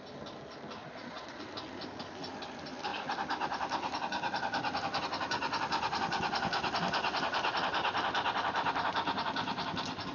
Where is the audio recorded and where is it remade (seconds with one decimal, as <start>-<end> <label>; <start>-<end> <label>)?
0.0-0.8 recorded; 0.8-1.4 remade; 1.4-10.1 recorded